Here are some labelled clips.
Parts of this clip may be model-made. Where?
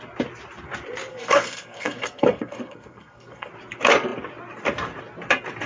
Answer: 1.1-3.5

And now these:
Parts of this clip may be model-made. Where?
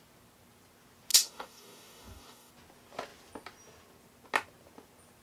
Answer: 1.1-2.5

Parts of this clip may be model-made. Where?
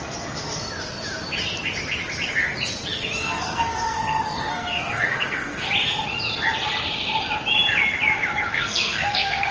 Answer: 3.2-5.7; 8.5-9.5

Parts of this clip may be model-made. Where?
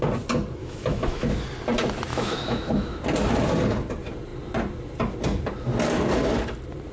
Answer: 0.6-1.4; 2.1-3.0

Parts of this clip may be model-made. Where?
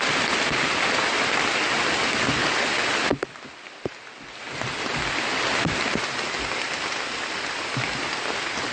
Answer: none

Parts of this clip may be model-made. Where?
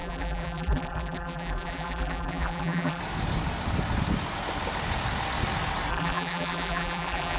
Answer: 0.0-3.0; 5.9-7.4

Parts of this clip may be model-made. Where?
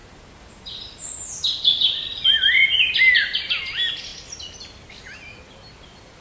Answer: none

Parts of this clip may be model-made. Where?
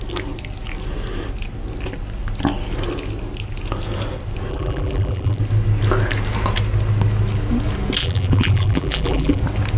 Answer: 4.5-5.4; 8.0-9.4